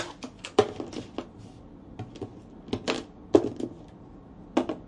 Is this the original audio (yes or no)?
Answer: yes